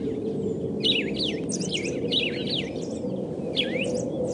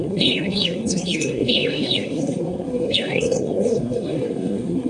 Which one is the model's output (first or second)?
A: second